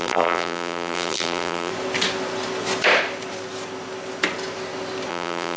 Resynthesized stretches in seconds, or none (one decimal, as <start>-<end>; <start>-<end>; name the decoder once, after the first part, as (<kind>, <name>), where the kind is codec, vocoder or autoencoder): 0.0-1.7 (vocoder, BigVGAN v2); 5.1-5.6